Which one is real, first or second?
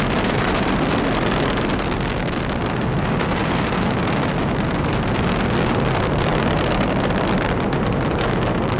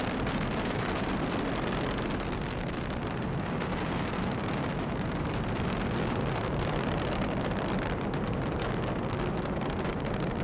first